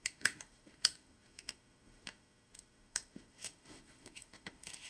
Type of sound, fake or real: fake